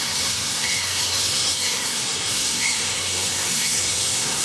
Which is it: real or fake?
fake